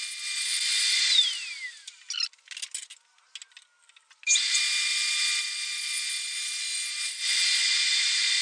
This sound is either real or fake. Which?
real